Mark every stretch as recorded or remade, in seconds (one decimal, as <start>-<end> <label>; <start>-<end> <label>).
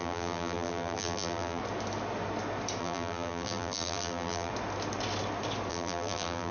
0.0-1.6 remade; 1.6-2.8 recorded; 2.8-4.5 remade; 4.5-5.7 recorded; 5.7-6.5 remade